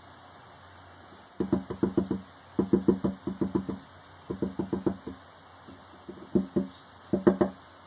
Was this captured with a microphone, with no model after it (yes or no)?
yes